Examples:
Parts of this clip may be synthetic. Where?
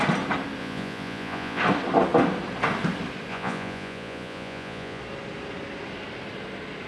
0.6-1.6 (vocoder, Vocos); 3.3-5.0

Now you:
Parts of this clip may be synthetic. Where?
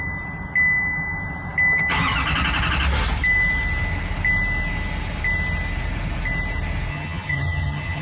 6.9-8.0 (vocoder, HiFi-GAN)